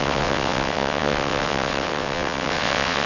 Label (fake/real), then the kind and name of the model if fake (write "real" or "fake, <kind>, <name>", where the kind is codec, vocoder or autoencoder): fake, vocoder, WaveNeXt